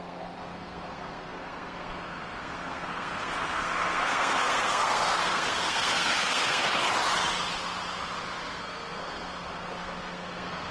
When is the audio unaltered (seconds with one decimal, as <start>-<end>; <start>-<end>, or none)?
6.6-8.5